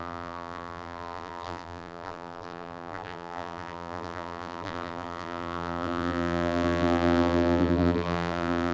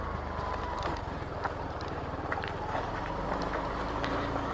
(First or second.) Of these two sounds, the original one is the second